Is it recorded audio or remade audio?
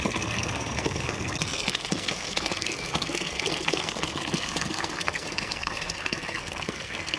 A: remade